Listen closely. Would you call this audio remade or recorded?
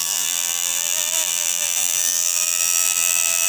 remade